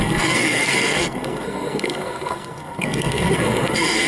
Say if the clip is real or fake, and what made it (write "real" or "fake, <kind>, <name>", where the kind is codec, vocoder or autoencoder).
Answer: fake, codec, SNAC